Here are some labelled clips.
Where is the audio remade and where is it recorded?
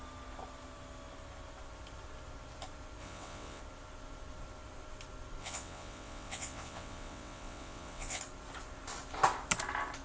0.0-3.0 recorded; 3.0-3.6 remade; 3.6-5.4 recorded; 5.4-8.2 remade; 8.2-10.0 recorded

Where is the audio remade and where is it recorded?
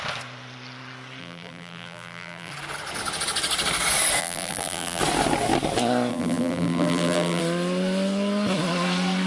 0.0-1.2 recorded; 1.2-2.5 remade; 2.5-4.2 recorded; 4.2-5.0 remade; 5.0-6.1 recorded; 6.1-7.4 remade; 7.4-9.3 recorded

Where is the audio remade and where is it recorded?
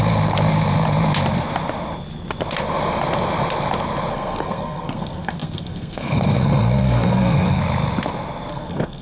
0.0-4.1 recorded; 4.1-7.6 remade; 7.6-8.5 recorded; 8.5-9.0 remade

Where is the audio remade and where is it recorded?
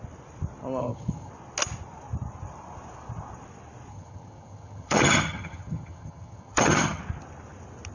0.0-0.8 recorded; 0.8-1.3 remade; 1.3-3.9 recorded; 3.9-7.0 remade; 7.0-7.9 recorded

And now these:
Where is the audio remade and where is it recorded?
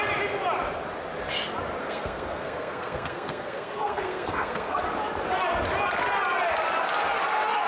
0.0-1.8 recorded; 1.8-4.8 remade; 4.8-7.7 recorded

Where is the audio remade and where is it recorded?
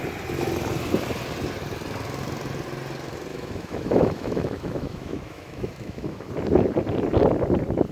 0.0-3.3 recorded; 3.3-6.3 remade; 6.3-7.9 recorded